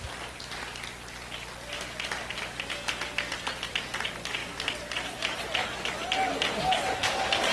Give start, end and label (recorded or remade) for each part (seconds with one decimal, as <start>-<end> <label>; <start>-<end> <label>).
0.0-7.5 recorded